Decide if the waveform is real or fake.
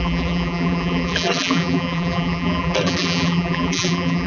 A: fake